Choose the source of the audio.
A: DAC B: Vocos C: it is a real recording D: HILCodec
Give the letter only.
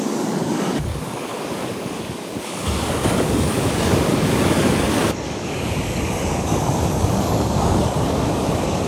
A